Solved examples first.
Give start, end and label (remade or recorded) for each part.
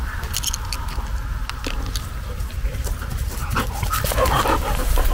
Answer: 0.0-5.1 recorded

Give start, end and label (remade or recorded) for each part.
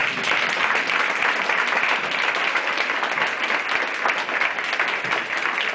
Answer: 0.0-5.7 recorded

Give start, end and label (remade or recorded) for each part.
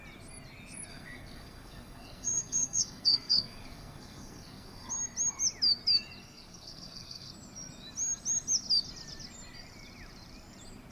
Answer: 0.0-0.9 recorded; 0.9-4.9 remade; 4.9-6.2 recorded; 6.2-7.3 remade; 7.3-10.9 recorded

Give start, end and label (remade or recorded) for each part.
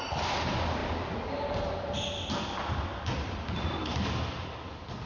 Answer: 0.0-5.1 recorded